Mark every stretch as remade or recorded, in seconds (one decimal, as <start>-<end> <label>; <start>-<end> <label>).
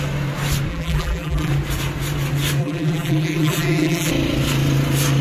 0.0-0.7 recorded; 0.7-1.5 remade; 1.5-2.6 recorded; 2.6-4.1 remade; 4.1-5.2 recorded